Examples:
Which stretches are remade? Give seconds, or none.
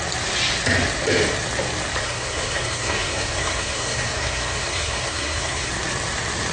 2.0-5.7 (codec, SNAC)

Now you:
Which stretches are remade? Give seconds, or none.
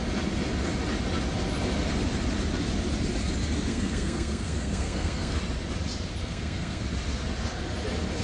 3.7-5.4 (codec, SNAC); 6.2-6.8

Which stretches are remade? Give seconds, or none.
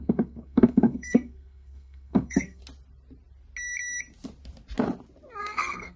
0.0-2.6 (codec, SNAC); 5.4-6.0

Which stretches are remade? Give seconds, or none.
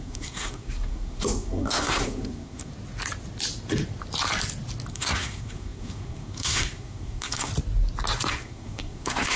0.0-2.7 (codec, SNAC); 4.9-7.5; 8.3-9.4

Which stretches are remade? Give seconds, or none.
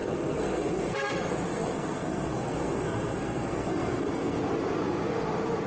0.0-1.1 (codec, SNAC); 1.5-4.4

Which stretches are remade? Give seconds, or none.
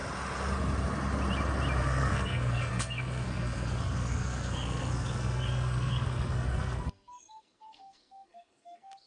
1.8-9.1 (codec, SNAC)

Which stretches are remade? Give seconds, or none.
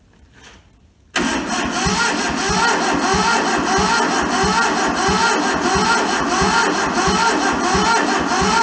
none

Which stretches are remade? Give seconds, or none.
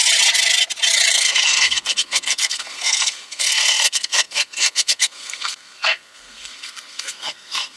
1.1-7.8 (codec, SNAC)